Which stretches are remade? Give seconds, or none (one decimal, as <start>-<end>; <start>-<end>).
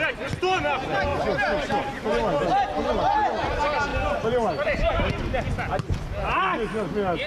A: none